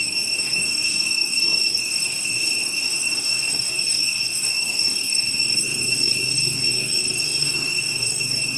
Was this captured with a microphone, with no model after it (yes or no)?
no